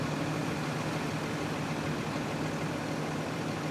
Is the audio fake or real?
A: real